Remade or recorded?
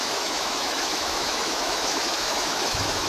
remade